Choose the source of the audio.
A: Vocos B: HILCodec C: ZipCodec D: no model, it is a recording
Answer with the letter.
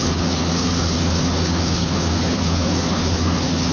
B